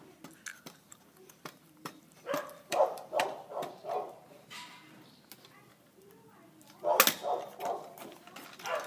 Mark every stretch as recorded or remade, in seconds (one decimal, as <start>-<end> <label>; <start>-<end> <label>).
0.0-0.5 recorded; 0.5-3.7 remade; 3.7-8.9 recorded